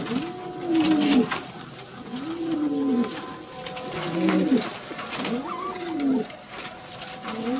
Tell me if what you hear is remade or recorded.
recorded